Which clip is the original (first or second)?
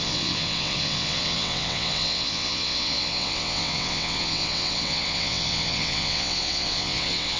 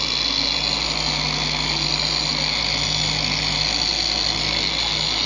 second